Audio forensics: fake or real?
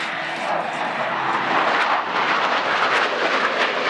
real